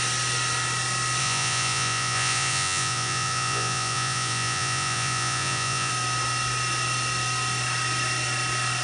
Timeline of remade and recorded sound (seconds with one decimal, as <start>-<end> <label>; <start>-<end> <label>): 0.0-1.2 recorded; 1.2-5.9 remade; 5.9-8.8 recorded